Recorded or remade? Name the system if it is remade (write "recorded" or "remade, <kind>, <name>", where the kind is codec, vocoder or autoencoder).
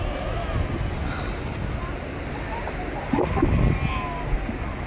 recorded